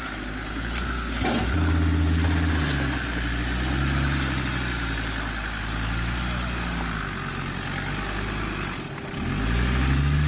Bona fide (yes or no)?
yes